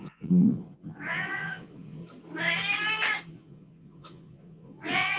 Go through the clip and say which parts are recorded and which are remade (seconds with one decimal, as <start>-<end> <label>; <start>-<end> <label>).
0.0-2.0 remade; 2.0-3.3 recorded; 3.3-5.2 remade